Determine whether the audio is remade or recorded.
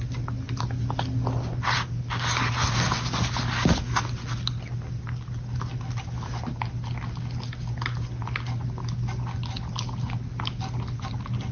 recorded